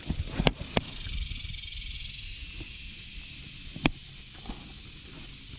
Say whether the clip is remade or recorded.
recorded